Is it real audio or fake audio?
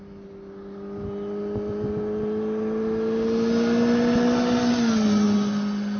real